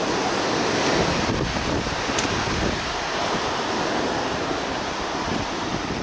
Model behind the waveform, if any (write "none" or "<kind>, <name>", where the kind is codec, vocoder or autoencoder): vocoder, BigVGAN v2